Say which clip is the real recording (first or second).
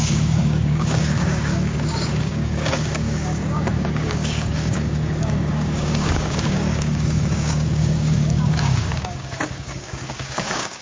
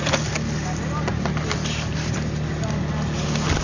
second